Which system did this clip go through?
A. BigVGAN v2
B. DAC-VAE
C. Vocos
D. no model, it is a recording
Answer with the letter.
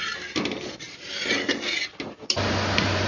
A